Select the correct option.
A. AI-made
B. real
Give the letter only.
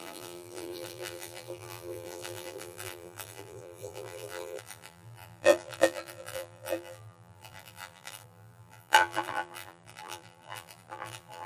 A